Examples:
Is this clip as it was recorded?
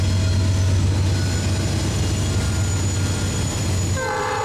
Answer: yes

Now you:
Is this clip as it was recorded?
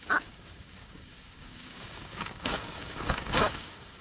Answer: no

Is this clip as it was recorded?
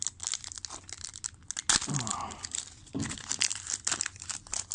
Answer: yes